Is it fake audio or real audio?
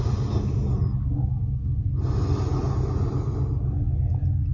real